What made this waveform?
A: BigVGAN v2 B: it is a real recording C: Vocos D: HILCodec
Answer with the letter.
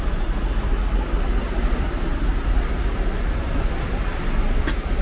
B